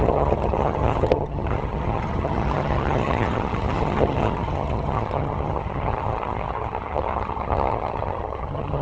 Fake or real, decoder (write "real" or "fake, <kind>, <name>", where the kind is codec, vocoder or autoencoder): fake, vocoder, HiFi-GAN